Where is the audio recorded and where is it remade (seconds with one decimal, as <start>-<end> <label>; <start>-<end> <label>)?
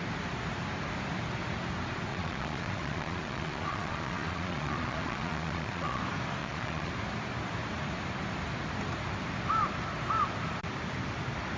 0.0-2.1 recorded; 2.1-6.0 remade; 6.0-6.4 recorded; 6.4-6.9 remade; 6.9-11.6 recorded